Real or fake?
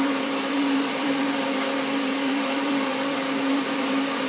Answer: fake